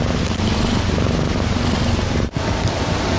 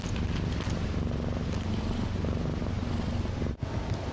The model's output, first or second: first